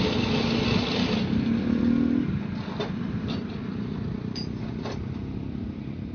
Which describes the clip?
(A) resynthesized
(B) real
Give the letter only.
B